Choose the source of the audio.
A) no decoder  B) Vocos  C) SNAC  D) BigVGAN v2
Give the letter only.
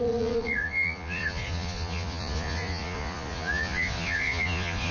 B